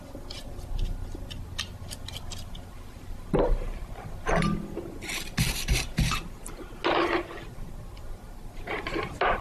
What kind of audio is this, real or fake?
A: real